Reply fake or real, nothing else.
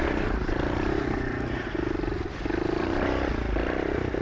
real